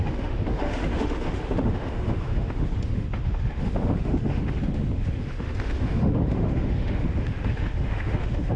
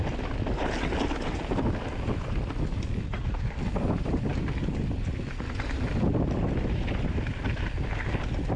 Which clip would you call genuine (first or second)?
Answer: second